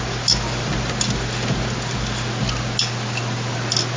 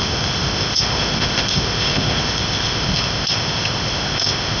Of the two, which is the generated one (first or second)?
second